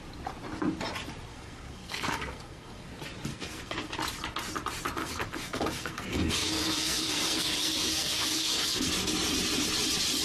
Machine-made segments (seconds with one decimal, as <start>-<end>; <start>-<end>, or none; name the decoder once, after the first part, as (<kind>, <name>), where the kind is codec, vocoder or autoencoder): 1.3-2.9 (codec, SNAC); 3.3-3.9; 5.0-8.9